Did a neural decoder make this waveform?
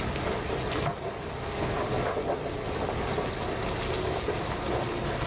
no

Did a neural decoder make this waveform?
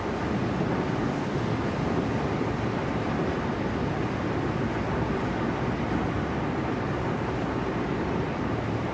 no